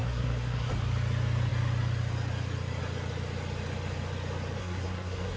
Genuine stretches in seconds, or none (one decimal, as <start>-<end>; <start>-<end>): 0.7-4.6